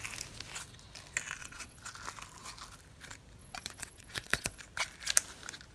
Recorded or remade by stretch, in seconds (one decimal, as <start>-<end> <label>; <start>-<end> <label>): 0.0-1.4 recorded; 1.4-1.9 remade; 1.9-3.4 recorded; 3.4-4.6 remade; 4.6-5.7 recorded